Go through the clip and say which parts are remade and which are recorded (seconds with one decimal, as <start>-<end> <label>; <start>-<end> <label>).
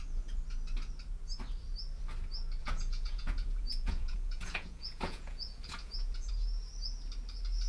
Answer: 0.0-2.6 recorded; 2.6-6.3 remade; 6.3-7.7 recorded